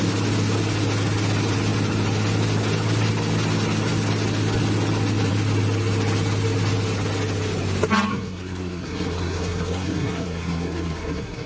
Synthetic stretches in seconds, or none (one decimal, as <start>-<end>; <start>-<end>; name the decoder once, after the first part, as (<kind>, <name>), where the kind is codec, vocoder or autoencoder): 8.1-11.5 (codec, SNAC)

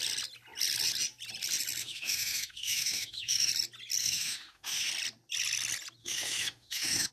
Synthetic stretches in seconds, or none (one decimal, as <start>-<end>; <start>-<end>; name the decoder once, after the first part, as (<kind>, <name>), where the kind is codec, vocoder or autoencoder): 1.8-3.5 (autoencoder, DAC-VAE); 4.0-4.9; 6.0-7.1

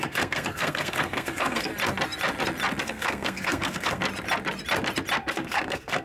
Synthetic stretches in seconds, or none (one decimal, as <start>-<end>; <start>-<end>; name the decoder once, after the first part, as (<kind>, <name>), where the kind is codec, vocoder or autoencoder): 0.0-1.7 (codec, SNAC); 2.8-4.0; 5.3-6.0

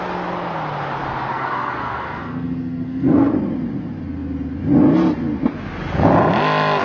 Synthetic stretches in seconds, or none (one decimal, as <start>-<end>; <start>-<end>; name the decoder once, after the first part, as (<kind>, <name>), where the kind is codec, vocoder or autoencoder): 1.3-3.3 (codec, SNAC)

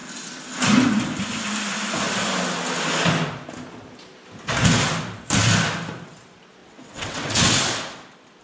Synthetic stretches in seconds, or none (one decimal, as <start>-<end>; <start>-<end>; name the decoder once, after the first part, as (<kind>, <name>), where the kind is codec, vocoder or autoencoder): 6.6-7.6 (vocoder, WaveNeXt)